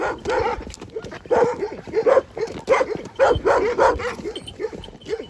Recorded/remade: recorded